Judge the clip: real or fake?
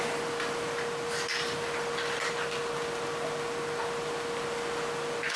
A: real